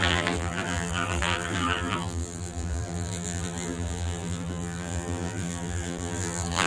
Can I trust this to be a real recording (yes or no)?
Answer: no